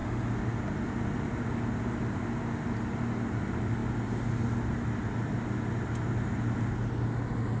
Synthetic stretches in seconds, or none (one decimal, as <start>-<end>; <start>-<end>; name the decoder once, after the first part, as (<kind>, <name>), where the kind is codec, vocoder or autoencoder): none